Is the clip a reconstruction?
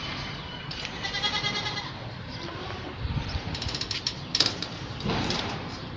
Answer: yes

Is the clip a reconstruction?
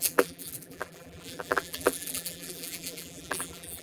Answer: yes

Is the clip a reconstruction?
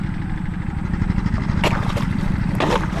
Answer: yes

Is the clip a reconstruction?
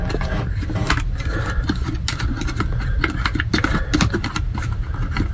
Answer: no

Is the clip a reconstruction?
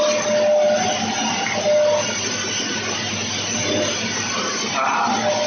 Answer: no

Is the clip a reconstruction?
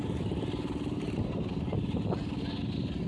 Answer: no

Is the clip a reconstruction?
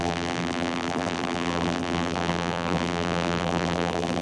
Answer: yes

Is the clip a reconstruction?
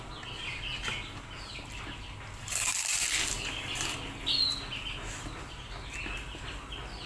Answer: no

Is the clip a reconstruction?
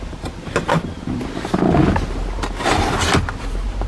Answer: no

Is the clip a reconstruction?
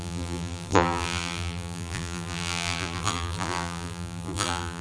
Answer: yes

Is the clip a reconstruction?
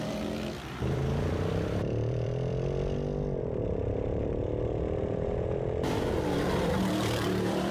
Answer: yes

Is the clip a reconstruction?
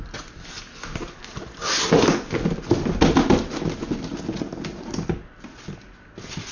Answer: no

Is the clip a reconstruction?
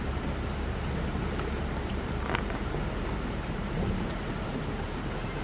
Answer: yes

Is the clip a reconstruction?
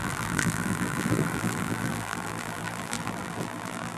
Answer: yes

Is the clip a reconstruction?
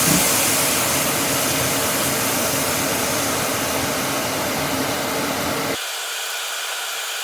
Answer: no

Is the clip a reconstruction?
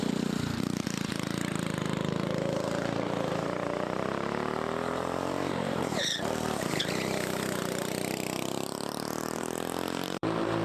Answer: yes